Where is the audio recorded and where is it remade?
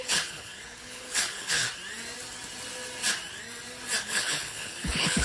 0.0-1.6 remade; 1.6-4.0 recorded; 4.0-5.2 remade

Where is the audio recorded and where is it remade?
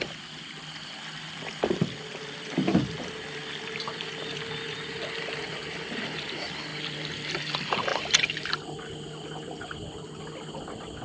0.0-11.0 recorded